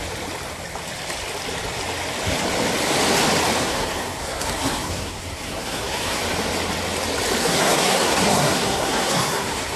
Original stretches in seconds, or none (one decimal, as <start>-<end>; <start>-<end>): 0.0-3.6; 6.2-7.4